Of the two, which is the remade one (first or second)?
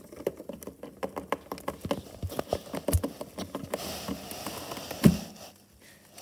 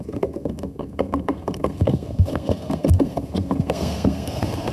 second